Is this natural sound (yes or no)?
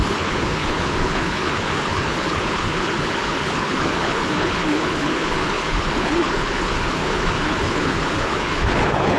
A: no